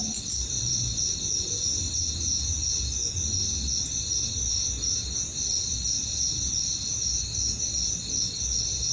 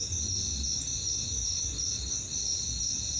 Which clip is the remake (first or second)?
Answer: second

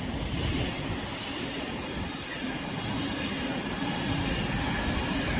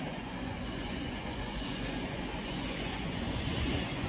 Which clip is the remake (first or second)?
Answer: second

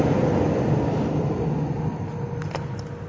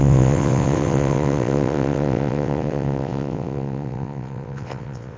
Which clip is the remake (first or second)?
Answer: second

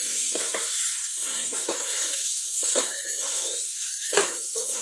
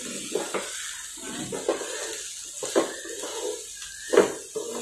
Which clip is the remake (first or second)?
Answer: first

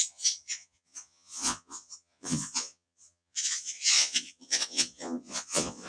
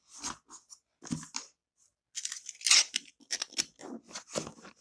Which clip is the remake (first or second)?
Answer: first